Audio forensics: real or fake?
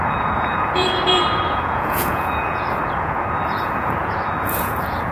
fake